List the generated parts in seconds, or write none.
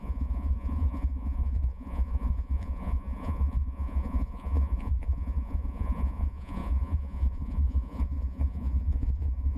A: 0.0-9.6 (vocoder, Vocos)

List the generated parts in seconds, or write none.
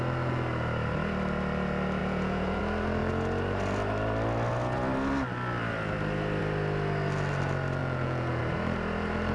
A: 2.0-2.6 (vocoder, Vocos); 7.8-8.4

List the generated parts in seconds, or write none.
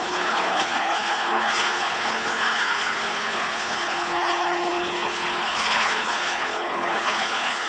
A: 0.0-7.7 (codec, HILCodec)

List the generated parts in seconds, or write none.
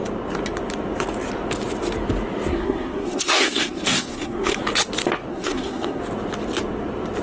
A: 2.5-4.6 (codec, SNAC); 5.3-6.0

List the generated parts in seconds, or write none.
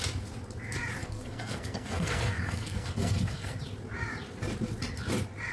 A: 1.0-3.6 (codec, SNAC)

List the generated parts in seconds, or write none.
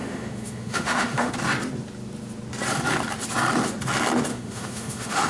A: 0.0-1.3 (autoencoder, DAC-VAE); 4.3-5.3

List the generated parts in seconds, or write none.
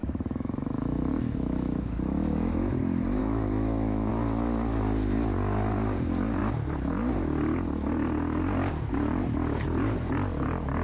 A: 0.0-2.8 (autoencoder, DAC-VAE); 3.2-4.1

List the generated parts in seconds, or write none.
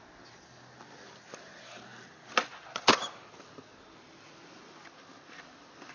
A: none